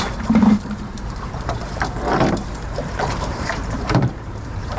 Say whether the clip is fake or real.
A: fake